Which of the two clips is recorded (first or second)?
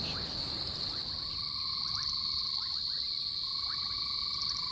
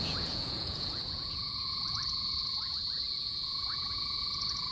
first